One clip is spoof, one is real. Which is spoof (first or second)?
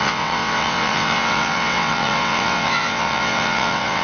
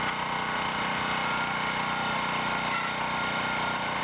first